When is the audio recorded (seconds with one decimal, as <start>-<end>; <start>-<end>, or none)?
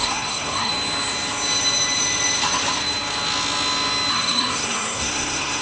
0.7-4.1